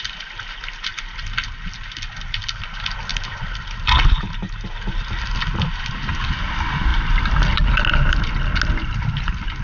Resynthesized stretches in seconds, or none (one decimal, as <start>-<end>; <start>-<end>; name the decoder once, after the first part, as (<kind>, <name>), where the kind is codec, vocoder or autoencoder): none